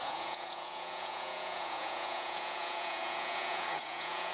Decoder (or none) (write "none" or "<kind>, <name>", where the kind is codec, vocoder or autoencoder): vocoder, Vocos